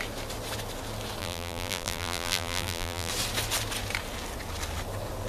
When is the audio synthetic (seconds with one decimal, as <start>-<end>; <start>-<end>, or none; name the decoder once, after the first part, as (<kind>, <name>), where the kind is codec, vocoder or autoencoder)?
1.2-3.1 (vocoder, BigVGAN v2)